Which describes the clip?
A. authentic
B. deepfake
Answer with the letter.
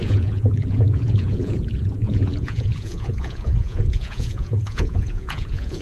B